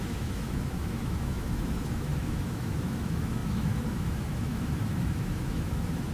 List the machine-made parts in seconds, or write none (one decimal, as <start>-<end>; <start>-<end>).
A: 0.0-6.1